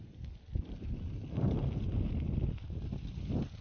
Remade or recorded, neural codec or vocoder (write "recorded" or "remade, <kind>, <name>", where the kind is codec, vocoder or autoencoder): recorded